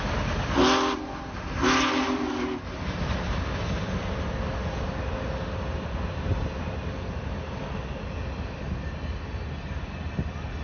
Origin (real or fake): real